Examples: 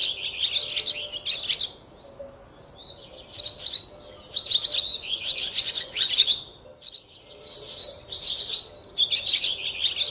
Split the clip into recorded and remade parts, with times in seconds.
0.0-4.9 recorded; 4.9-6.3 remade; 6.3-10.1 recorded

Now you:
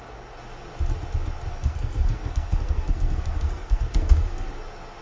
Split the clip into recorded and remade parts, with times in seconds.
0.0-1.5 recorded; 1.5-4.5 remade; 4.5-5.0 recorded